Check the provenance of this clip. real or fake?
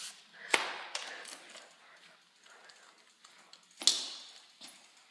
real